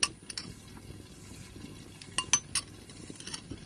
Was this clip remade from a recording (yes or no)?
no